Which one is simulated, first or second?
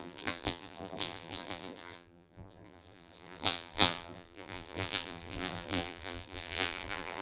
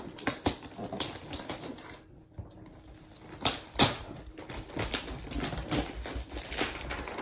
first